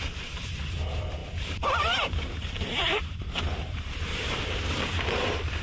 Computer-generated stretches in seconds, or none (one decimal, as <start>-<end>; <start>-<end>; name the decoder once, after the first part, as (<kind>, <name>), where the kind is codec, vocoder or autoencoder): 1.2-4.6 (vocoder, BigVGAN v2)